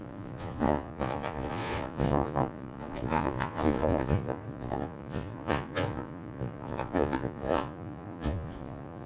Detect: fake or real fake